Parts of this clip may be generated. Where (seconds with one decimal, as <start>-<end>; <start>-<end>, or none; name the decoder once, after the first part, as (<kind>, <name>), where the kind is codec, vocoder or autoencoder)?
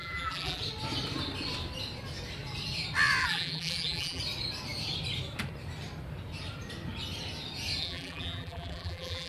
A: 0.0-0.6 (vocoder, BigVGAN v2); 3.2-4.2; 7.8-9.3